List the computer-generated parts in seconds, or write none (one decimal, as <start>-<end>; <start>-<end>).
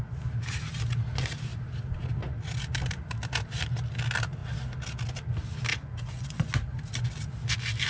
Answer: 5.7-6.5